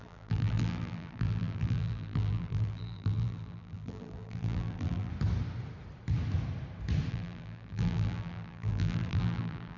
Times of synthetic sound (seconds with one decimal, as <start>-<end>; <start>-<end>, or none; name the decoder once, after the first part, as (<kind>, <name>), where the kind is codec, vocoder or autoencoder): 0.0-5.1 (vocoder, BigVGAN v2); 7.1-9.8